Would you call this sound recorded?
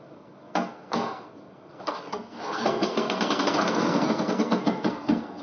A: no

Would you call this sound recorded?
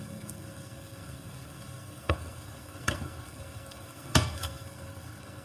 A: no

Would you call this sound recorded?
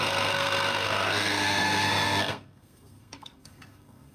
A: no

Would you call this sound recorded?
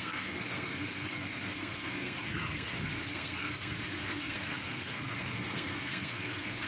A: no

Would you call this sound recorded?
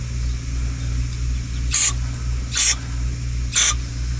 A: yes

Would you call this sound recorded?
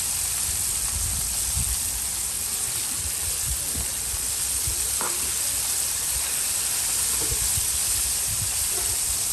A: yes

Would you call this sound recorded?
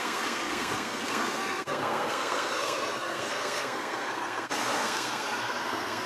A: no